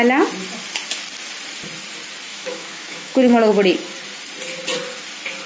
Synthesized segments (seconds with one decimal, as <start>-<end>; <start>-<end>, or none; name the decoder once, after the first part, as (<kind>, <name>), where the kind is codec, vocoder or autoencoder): 2.3-3.5 (autoencoder, DAC-VAE)